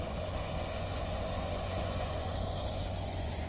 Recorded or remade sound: remade